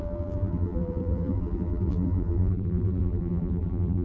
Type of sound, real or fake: fake